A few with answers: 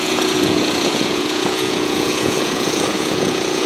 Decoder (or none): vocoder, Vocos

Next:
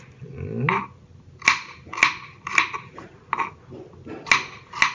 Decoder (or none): none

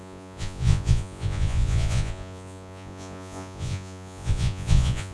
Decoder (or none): vocoder, Vocos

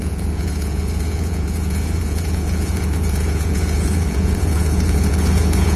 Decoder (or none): vocoder, Vocos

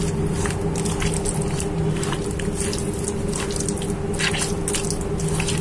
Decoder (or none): none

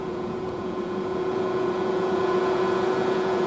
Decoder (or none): vocoder, Vocos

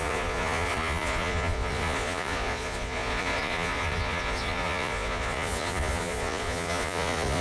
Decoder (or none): vocoder, Vocos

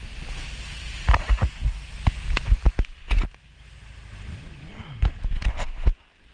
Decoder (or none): none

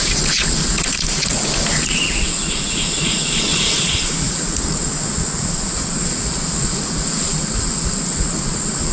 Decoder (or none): vocoder, Vocos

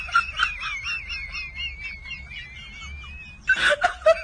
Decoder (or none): none